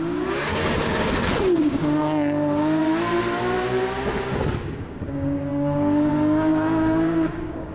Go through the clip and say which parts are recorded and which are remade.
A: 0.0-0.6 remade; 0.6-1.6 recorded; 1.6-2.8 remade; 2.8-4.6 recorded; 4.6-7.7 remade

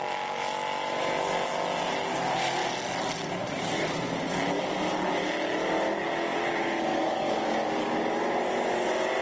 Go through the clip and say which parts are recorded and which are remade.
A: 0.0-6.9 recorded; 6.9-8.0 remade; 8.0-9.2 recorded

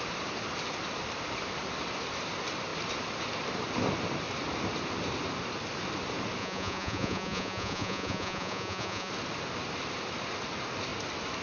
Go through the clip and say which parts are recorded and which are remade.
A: 0.0-6.4 recorded; 6.4-9.1 remade; 9.1-11.4 recorded

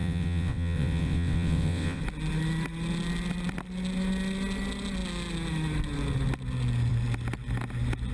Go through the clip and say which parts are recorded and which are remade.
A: 0.0-2.0 remade; 2.0-8.1 recorded